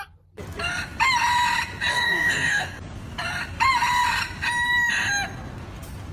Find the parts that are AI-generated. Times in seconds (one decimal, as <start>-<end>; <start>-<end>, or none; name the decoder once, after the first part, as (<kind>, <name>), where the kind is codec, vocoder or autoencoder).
1.9-2.8 (codec, DAC)